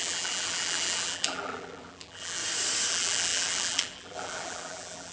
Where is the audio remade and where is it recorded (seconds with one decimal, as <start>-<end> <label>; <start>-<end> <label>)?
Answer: 0.0-2.4 remade; 2.4-2.9 recorded; 2.9-5.1 remade